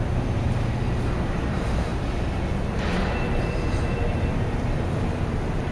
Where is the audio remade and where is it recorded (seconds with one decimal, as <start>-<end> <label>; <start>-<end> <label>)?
0.0-5.7 recorded